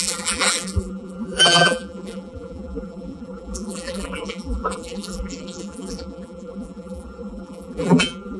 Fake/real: fake